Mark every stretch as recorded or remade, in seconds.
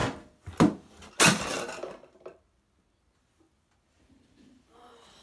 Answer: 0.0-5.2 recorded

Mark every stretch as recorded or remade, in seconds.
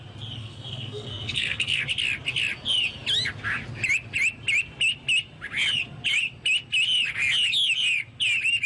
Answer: 0.0-0.4 recorded; 0.4-1.8 remade; 1.8-8.7 recorded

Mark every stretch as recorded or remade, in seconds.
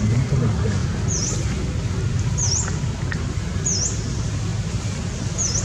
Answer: 0.0-5.6 recorded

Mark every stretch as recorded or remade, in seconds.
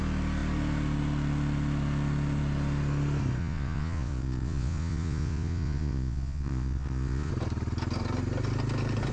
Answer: 0.0-3.4 recorded; 3.4-7.3 remade; 7.3-9.1 recorded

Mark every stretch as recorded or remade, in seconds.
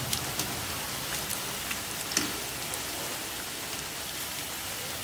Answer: 0.0-5.0 recorded